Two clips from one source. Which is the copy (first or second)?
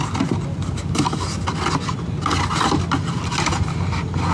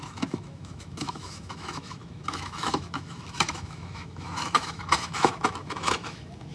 second